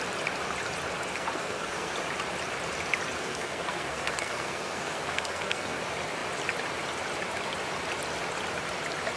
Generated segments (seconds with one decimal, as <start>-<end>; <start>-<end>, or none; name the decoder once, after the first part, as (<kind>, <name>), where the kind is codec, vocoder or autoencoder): 1.1-1.9 (codec, SNAC); 3.2-5.8